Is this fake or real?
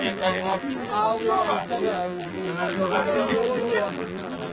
fake